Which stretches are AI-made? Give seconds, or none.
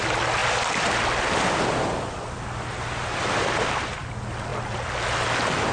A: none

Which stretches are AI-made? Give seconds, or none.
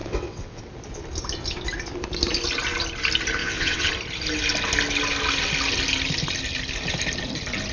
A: 0.0-0.6; 3.4-3.9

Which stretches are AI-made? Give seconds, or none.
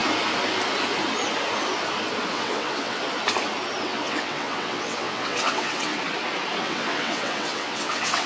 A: 2.3-3.0; 3.8-5.9; 6.6-8.3